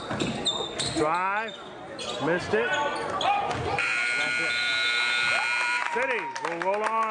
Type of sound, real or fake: real